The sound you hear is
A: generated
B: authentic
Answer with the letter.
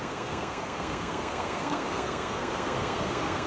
A